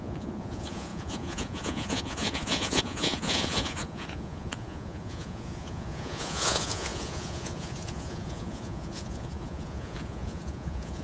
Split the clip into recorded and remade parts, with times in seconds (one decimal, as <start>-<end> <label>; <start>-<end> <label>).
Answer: 0.0-11.0 remade